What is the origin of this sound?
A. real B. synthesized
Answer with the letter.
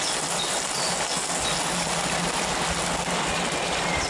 A